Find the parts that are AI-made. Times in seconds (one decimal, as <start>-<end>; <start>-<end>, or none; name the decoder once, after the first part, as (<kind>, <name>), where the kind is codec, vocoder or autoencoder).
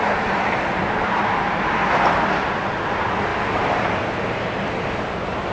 0.0-1.8 (vocoder, BigVGAN v2); 2.9-5.5